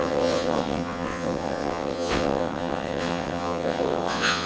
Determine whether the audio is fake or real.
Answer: fake